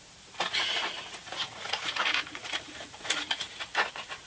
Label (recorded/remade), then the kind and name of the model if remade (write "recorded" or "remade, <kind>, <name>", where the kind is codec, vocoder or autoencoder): remade, vocoder, Vocos